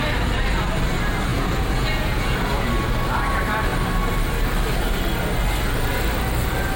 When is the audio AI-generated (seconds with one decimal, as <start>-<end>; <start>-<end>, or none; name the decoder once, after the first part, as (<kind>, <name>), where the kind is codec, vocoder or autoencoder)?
1.3-2.7 (vocoder, Vocos)